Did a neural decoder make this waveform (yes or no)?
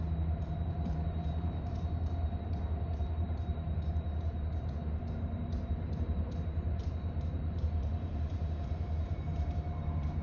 yes